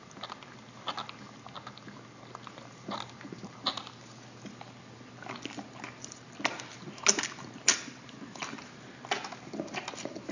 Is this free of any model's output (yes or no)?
yes